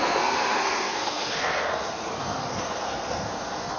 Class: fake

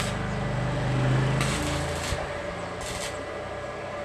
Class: real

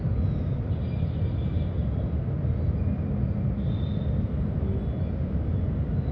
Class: real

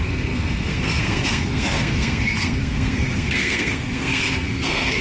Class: fake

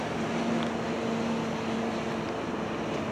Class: real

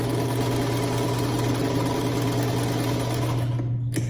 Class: real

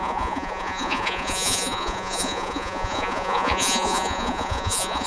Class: fake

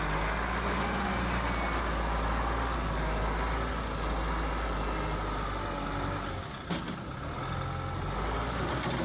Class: real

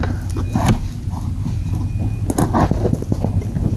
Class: real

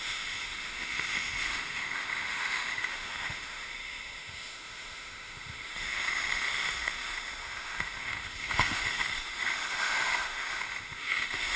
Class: fake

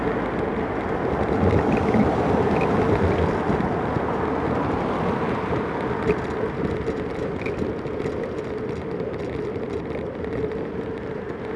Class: real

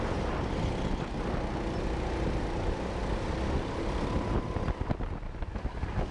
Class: real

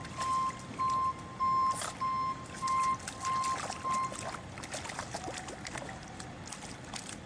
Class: real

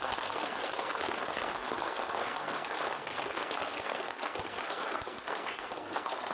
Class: fake